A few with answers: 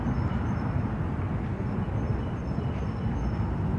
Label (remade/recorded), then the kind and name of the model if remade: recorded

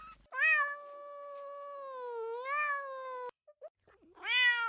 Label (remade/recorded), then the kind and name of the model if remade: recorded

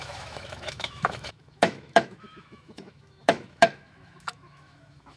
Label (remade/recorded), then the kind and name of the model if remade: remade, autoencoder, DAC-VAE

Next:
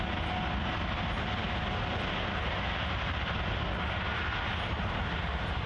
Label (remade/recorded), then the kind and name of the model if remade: recorded